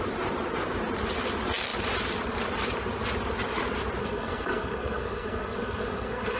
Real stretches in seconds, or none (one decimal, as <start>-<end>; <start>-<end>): 0.0-4.0